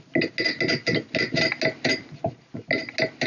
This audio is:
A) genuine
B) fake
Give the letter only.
A